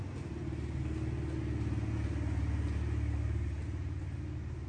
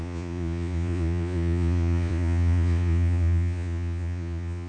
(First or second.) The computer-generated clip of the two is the second